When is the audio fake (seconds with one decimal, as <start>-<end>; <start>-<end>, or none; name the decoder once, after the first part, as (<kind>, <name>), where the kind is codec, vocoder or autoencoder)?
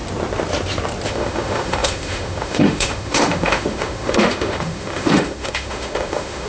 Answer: 1.1-6.5 (autoencoder, DAC-VAE)